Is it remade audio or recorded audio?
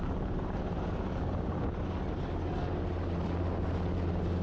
recorded